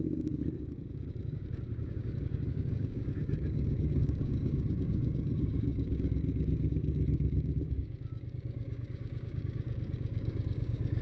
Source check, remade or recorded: remade